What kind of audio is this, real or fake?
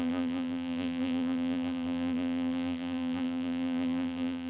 fake